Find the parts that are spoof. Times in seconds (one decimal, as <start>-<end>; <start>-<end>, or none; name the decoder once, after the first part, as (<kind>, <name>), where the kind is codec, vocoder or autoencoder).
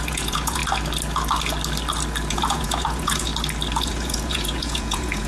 0.0-0.6 (vocoder, Vocos); 2.3-3.3; 3.8-5.3